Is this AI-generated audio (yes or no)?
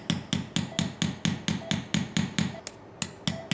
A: no